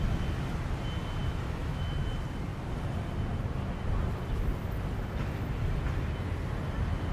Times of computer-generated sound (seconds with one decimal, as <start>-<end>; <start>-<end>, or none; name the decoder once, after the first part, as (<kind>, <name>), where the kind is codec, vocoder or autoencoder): 1.2-1.9 (autoencoder, DAC-VAE)